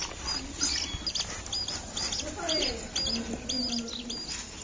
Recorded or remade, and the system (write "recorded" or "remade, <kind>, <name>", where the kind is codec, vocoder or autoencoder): recorded